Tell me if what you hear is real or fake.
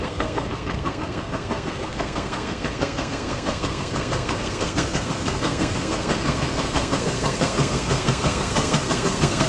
fake